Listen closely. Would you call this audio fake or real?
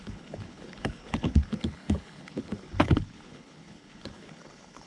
fake